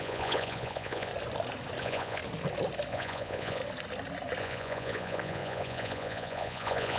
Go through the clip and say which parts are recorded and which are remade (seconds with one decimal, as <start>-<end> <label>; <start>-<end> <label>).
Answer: 0.0-1.1 remade; 1.1-1.8 recorded; 1.8-2.2 remade; 2.2-2.9 recorded; 2.9-3.6 remade; 3.6-4.4 recorded; 4.4-7.0 remade